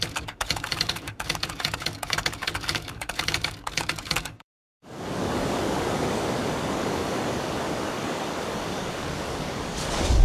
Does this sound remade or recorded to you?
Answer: remade